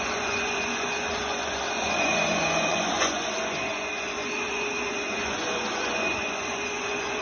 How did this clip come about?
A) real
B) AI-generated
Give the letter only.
B